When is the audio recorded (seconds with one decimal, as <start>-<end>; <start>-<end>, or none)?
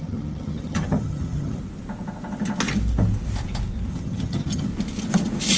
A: 1.6-3.9; 4.7-5.6